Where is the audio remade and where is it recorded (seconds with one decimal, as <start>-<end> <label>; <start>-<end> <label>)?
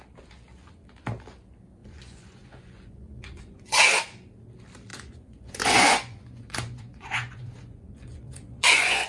0.0-1.8 recorded; 1.8-3.9 remade; 3.9-4.9 recorded; 4.9-9.1 remade